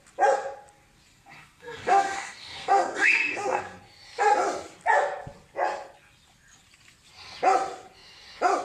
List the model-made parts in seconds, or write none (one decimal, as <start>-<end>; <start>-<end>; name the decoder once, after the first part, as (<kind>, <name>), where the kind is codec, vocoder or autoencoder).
1.1-3.6 (codec, SNAC)